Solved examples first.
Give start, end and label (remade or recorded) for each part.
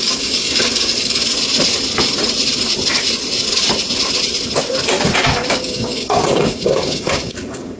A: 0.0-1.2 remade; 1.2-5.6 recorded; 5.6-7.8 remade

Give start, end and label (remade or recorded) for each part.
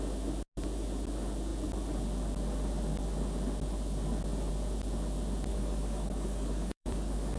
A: 0.0-5.5 recorded; 5.5-7.4 remade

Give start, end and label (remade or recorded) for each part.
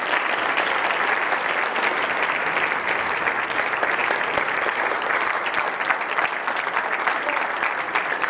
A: 0.0-8.3 recorded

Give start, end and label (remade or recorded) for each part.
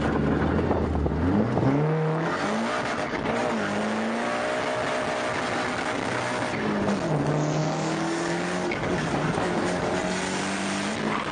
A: 0.0-7.6 recorded; 7.6-10.0 remade; 10.0-11.3 recorded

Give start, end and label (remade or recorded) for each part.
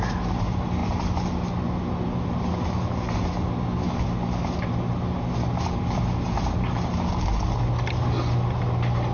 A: 0.0-9.1 recorded